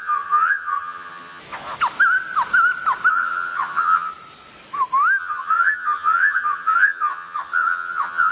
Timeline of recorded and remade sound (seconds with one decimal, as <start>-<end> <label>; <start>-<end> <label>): 0.0-1.4 remade; 1.4-3.1 recorded; 3.1-4.1 remade; 4.1-5.2 recorded; 5.2-8.3 remade